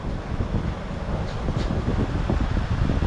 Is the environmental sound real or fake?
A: real